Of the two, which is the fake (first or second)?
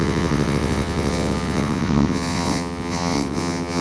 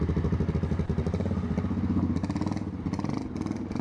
first